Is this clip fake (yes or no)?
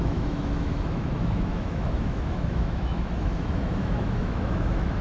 yes